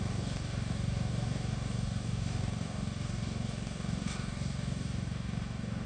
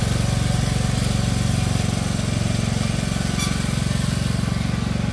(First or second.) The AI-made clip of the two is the first